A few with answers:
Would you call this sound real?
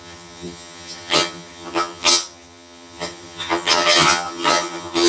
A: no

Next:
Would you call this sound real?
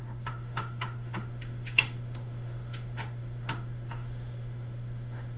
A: no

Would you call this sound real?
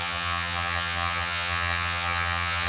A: no